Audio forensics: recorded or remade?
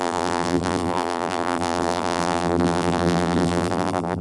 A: remade